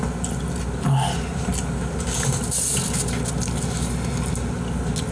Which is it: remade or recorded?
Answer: recorded